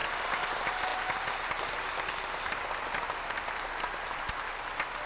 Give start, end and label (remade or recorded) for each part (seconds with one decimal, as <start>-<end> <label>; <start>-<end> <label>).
0.0-5.1 recorded